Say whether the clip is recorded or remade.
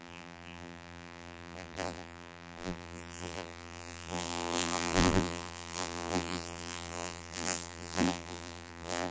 remade